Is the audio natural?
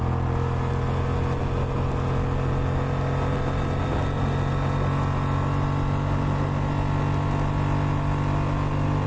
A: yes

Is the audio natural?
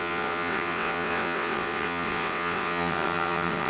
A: no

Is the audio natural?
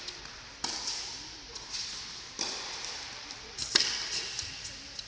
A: yes